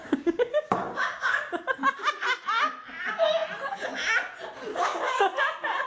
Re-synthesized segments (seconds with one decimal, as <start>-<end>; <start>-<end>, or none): 0.0-1.4; 4.7-5.4

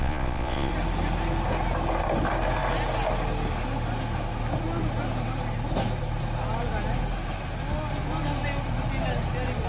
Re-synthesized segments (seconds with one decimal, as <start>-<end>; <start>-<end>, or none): 0.0-0.7

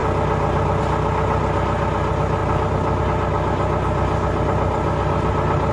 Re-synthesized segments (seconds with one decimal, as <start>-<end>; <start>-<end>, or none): none